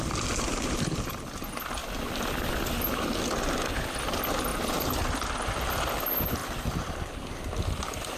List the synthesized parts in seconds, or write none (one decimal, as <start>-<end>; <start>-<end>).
1.8-2.5; 4.5-5.0; 6.4-7.1